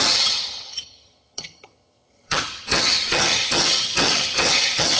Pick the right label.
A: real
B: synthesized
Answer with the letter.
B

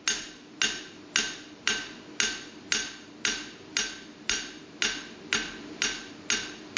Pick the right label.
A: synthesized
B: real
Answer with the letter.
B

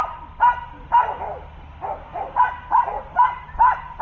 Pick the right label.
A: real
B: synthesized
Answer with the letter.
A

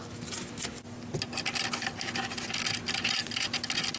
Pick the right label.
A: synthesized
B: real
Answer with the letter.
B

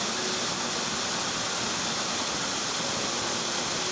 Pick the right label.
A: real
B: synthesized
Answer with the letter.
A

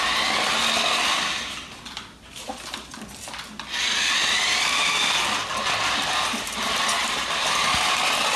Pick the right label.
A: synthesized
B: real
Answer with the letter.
B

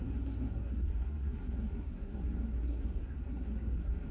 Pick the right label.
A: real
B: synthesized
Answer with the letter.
B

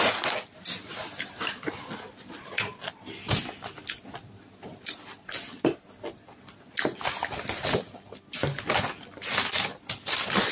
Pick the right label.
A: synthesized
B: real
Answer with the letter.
B